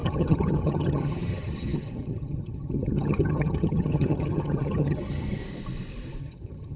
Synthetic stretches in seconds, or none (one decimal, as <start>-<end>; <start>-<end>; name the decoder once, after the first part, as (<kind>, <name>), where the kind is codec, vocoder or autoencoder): 0.0-5.4 (vocoder, HiFi-GAN); 6.2-6.8